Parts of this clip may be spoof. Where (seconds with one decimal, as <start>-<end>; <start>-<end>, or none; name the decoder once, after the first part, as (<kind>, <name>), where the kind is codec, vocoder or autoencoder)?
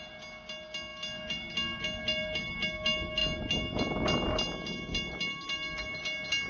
none